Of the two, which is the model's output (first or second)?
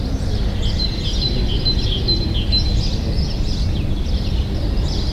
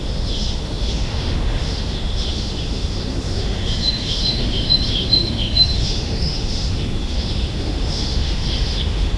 second